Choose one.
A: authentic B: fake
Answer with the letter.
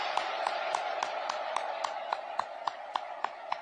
A